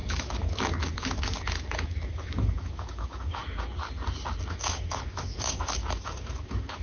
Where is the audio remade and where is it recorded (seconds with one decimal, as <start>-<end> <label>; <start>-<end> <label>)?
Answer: 0.0-3.4 remade; 3.4-4.5 recorded; 4.5-6.8 remade